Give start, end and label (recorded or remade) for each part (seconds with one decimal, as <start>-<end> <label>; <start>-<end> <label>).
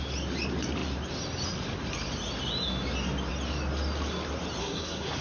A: 0.0-4.6 recorded; 4.6-5.2 remade